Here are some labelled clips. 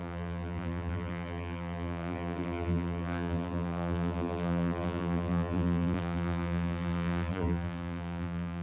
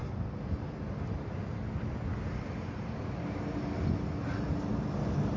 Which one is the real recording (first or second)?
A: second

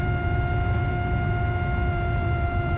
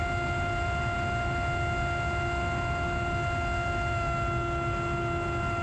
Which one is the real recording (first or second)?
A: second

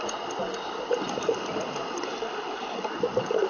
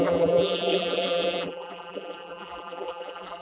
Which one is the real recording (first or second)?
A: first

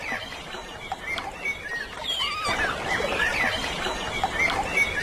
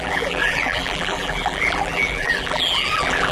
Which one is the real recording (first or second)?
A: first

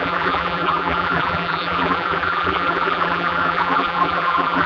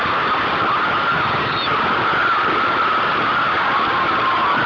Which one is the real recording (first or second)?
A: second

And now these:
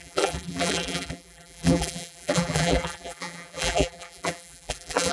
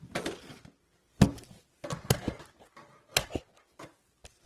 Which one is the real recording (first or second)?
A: second